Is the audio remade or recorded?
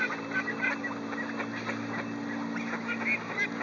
recorded